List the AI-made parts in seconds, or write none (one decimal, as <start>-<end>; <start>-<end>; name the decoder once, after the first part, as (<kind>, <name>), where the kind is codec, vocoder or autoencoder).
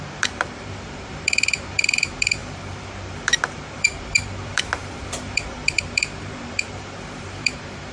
0.0-7.9 (vocoder, BigVGAN v2)